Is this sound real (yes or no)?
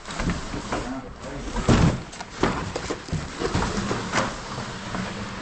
yes